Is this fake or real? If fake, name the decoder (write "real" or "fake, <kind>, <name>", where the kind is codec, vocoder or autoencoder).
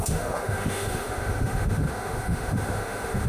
fake, autoencoder, DAC-VAE